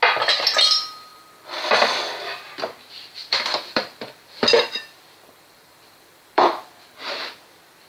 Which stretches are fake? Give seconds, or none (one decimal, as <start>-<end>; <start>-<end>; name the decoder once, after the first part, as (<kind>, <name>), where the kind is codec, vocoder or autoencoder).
1.1-2.0 (vocoder, BigVGAN v2); 3.2-6.6